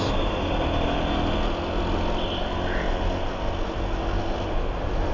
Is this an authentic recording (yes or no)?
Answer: yes